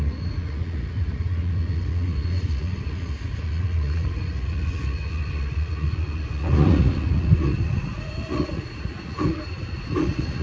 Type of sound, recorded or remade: remade